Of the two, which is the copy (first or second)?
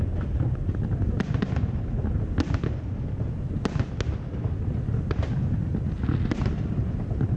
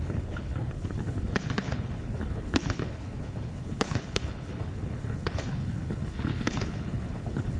second